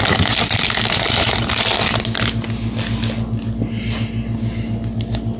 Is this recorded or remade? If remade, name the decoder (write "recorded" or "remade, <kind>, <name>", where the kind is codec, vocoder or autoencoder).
recorded